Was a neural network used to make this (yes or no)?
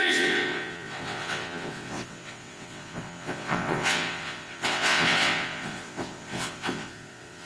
yes